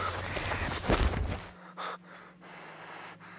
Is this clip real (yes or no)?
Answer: yes